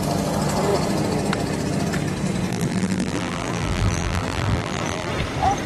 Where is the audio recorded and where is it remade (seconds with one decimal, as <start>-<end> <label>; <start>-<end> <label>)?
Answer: 0.0-2.5 recorded; 2.5-5.1 remade; 5.1-5.7 recorded